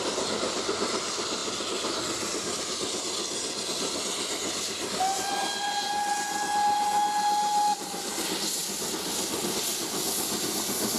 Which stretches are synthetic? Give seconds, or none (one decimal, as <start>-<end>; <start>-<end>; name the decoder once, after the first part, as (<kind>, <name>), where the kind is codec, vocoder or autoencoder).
none